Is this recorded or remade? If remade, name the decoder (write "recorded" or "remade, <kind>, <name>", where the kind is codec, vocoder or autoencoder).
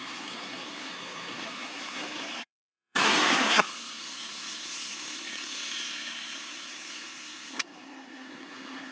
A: remade, codec, SNAC